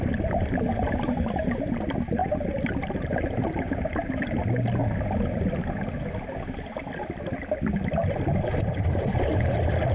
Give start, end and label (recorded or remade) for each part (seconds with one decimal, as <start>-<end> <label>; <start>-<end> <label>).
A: 0.0-2.2 recorded; 2.2-4.1 remade; 4.1-9.9 recorded